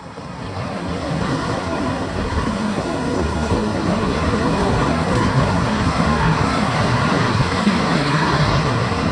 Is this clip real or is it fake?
fake